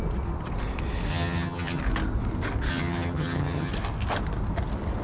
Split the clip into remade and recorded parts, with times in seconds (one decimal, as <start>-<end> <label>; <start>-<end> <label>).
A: 0.0-1.1 recorded; 1.1-1.8 remade; 1.8-2.7 recorded; 2.7-3.7 remade; 3.7-5.0 recorded